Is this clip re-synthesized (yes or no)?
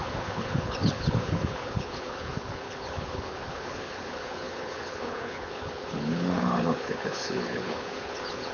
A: yes